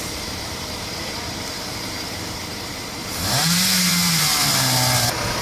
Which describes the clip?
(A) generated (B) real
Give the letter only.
A